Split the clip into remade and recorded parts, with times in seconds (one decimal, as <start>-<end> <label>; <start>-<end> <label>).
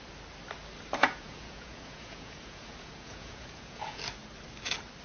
0.0-1.0 recorded; 1.0-4.0 remade; 4.0-5.0 recorded